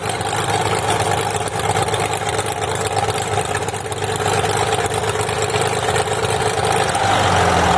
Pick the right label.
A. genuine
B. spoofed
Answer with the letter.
A